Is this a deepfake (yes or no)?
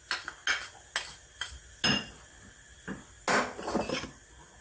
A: no